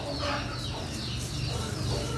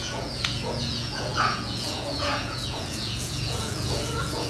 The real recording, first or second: first